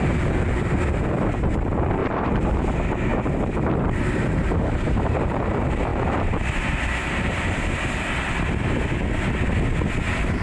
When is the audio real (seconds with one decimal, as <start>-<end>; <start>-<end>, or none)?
0.0-2.0; 2.7-3.1; 5.5-10.4